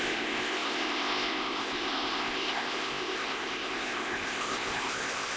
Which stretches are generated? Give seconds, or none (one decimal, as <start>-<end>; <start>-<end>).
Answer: 0.0-5.4